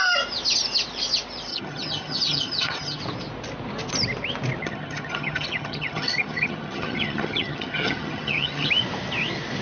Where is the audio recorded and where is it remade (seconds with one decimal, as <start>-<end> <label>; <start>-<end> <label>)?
0.0-1.5 recorded; 1.5-3.0 remade; 3.0-4.6 recorded; 4.6-8.7 remade; 8.7-9.6 recorded